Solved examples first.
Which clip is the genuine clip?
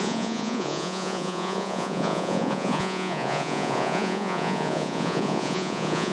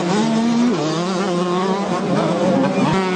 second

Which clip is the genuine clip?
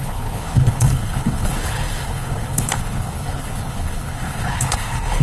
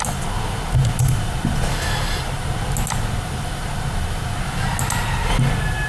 second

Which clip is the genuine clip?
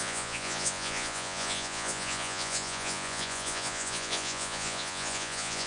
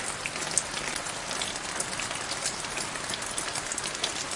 second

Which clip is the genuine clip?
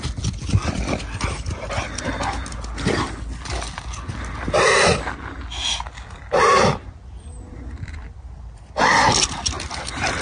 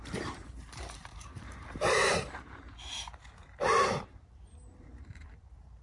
first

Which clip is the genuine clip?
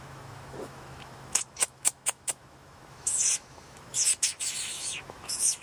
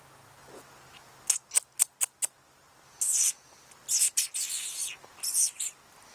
second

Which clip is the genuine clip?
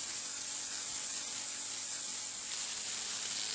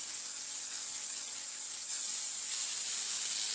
second